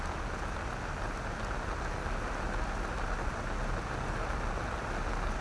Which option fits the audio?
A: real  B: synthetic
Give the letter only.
A